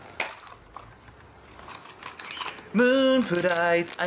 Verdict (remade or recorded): recorded